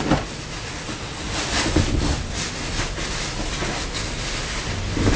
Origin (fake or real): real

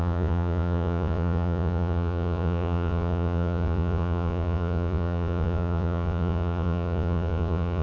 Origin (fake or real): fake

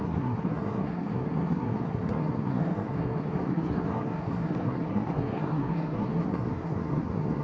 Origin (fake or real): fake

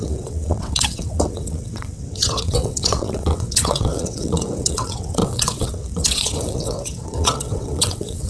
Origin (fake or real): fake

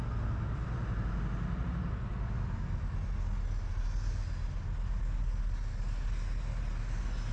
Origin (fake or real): real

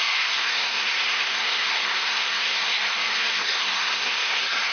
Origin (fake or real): fake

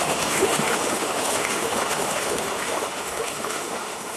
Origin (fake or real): fake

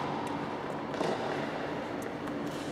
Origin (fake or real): real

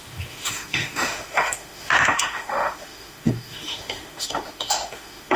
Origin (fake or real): fake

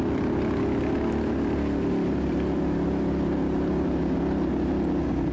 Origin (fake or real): real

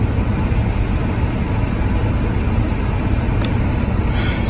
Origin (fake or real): real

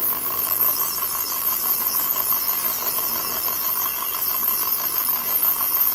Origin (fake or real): fake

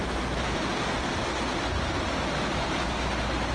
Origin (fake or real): real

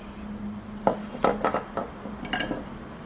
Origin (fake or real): real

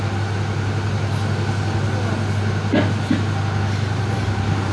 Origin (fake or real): real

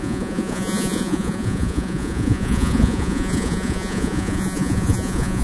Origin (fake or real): fake